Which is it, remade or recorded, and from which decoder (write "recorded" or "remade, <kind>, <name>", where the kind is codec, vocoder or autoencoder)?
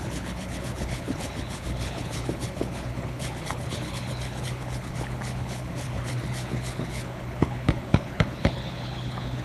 remade, codec, HILCodec